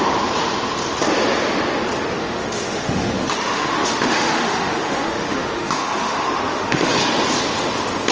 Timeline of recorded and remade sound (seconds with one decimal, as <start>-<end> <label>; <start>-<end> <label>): 0.0-2.2 recorded; 2.2-6.9 remade; 6.9-8.1 recorded